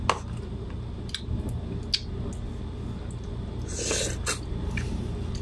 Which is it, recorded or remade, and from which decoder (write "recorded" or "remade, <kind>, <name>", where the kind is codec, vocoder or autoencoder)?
recorded